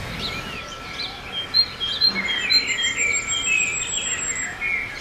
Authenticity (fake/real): real